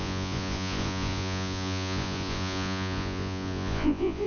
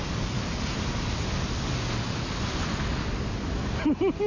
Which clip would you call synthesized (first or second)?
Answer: first